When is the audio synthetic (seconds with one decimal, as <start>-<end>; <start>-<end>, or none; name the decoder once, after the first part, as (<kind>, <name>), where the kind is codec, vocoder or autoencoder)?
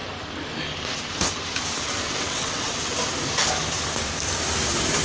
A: 2.1-2.7 (vocoder, WaveNeXt)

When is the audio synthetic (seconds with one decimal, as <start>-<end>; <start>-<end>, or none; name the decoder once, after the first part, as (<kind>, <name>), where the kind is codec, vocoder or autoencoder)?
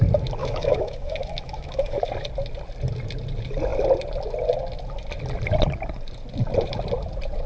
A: 0.4-2.1 (autoencoder, DAC-VAE)